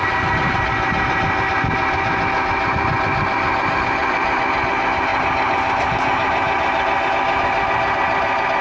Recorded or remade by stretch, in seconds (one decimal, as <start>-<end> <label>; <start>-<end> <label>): 0.0-8.6 recorded